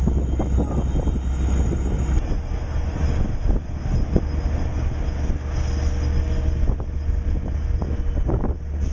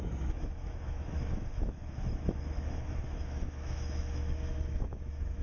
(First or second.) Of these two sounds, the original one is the first